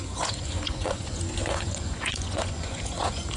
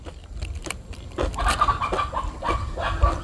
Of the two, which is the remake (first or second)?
first